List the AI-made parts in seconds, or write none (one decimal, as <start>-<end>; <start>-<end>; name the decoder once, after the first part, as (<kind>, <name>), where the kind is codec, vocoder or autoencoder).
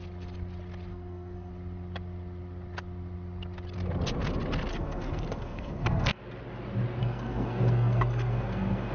0.9-1.5 (codec, SNAC); 4.7-6.2; 7.0-8.9